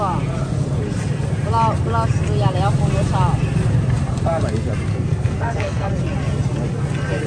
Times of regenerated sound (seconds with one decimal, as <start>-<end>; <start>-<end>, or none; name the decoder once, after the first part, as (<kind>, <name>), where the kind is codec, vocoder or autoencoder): 4.9-5.9 (codec, SNAC)